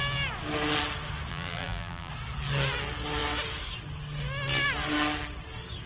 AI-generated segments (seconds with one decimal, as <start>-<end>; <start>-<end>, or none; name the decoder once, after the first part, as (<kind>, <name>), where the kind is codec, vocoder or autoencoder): 1.3-2.1 (vocoder, BigVGAN v2)

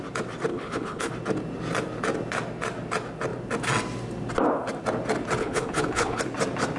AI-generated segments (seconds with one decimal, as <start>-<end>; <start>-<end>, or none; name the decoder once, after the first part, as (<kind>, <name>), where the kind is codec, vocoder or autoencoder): 0.5-1.1 (codec, HILCodec); 5.4-6.2

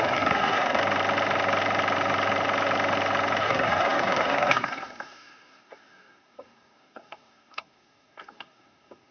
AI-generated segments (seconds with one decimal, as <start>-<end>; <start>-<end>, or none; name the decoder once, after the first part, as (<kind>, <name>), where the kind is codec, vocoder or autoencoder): 0.0-0.8 (codec, SNAC); 3.4-9.1

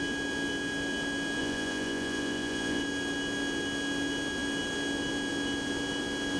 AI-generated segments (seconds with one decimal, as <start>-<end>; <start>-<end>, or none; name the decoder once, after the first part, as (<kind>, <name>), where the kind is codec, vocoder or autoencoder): 1.4-2.8 (vocoder, Vocos)

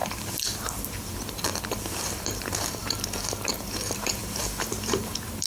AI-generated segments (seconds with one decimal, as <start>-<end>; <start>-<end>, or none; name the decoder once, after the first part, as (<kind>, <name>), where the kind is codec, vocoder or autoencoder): 0.0-5.5 (vocoder, BigVGAN v2)

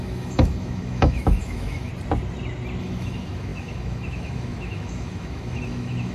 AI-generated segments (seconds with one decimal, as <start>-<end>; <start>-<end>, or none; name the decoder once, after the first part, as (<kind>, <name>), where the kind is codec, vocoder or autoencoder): 0.0-1.9 (autoencoder, DAC-VAE); 2.8-6.1

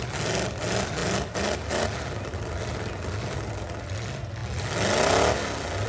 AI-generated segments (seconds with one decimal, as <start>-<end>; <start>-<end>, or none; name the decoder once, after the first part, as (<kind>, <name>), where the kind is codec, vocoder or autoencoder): none

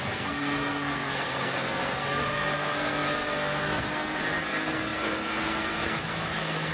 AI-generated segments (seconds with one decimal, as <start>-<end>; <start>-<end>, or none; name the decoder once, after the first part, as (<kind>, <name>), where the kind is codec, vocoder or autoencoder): 0.0-6.7 (codec, SNAC)